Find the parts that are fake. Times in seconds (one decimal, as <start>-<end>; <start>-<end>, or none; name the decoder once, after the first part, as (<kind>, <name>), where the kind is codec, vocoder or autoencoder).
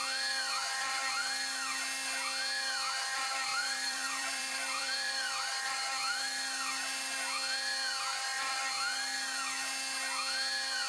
3.5-5.4 (vocoder, BigVGAN v2)